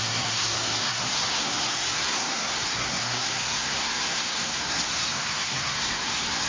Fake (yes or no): yes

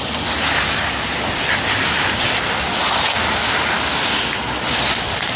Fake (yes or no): no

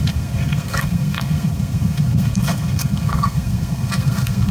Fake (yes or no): yes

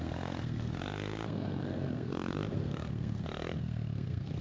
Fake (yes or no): yes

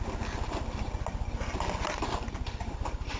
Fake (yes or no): no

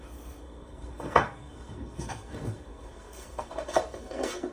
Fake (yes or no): yes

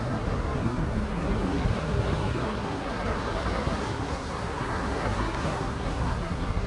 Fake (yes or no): yes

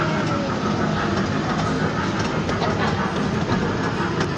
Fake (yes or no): no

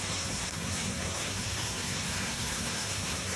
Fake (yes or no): yes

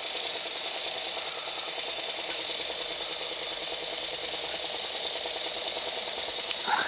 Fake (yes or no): no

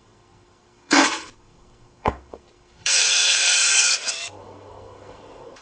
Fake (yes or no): yes